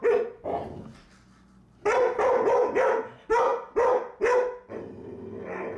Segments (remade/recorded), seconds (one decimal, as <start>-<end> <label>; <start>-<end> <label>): 0.0-5.8 recorded